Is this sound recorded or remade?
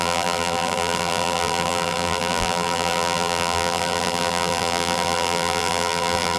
remade